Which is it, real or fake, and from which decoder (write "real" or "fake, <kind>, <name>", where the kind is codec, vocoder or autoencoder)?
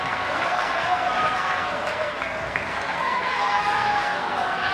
fake, codec, SNAC